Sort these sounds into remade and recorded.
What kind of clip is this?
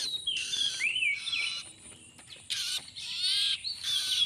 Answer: remade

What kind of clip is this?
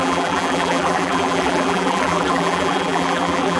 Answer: remade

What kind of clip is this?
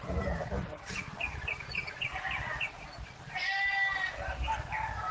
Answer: recorded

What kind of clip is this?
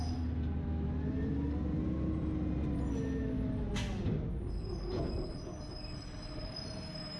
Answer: recorded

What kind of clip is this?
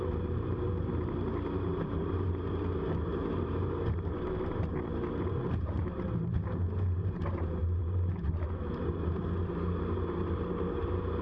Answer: remade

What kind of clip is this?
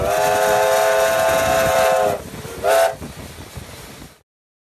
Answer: recorded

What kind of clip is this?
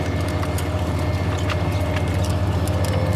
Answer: recorded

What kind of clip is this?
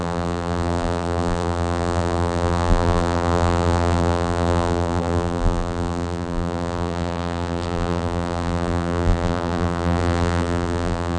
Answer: remade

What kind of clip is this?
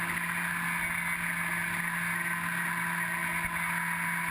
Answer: recorded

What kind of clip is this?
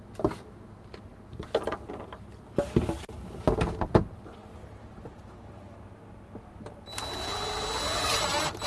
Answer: recorded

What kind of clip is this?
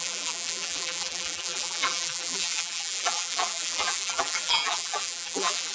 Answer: remade